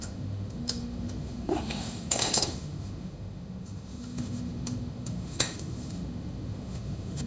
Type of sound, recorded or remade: remade